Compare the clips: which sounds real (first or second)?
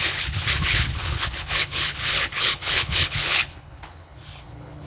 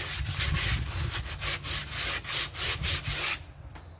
second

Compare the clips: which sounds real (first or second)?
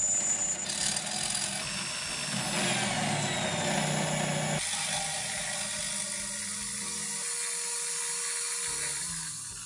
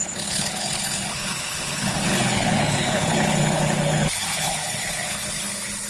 first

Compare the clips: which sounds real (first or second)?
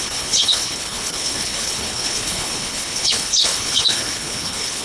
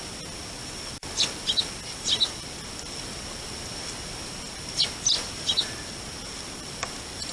second